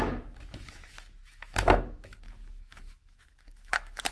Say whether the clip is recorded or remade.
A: remade